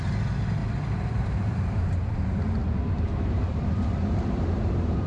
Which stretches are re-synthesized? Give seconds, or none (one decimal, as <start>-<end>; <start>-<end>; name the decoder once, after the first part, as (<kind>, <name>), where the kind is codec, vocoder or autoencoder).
0.6-1.9 (vocoder, BigVGAN v2); 2.6-5.1